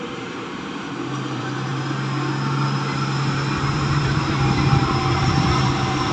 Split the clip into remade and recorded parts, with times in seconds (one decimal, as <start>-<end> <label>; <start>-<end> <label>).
0.0-1.7 remade; 1.7-3.7 recorded; 3.7-6.1 remade

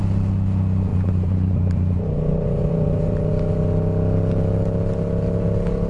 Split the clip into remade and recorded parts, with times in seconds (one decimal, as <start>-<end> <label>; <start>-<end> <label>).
0.0-0.9 recorded; 0.9-3.3 remade; 3.3-5.9 recorded

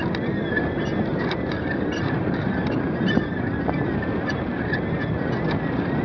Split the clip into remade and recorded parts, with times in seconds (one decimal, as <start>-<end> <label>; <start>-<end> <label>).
0.0-1.1 recorded; 1.1-3.4 remade; 3.4-6.0 recorded

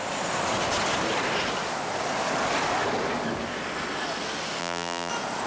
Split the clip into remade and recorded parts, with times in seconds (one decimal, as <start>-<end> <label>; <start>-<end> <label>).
0.0-4.6 recorded; 4.6-5.1 remade; 5.1-5.5 recorded

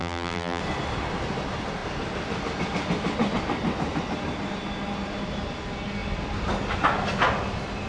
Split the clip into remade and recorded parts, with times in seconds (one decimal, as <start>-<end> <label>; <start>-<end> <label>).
0.0-0.6 remade; 0.6-7.9 recorded